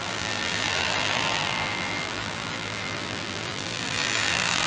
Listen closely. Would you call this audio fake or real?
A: fake